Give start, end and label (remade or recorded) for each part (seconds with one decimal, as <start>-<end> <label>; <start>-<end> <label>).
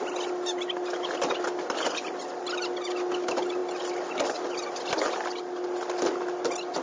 0.0-6.8 recorded